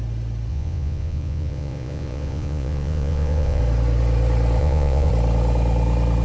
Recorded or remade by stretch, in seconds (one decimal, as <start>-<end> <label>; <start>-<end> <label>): 0.0-0.5 recorded; 0.5-3.6 remade; 3.6-4.6 recorded; 4.6-5.1 remade; 5.1-6.2 recorded